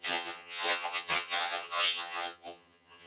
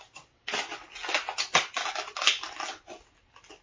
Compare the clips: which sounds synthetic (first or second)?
first